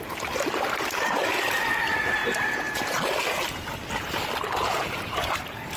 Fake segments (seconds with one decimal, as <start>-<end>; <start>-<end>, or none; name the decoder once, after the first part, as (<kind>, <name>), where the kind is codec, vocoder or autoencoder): 2.2-3.8 (vocoder, BigVGAN v2)